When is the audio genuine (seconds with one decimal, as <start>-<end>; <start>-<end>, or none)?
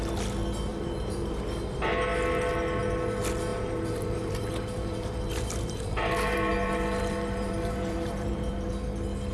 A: 0.0-0.7; 1.4-3.5; 8.7-9.3